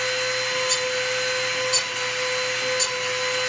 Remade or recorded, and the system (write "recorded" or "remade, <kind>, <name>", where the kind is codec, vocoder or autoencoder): recorded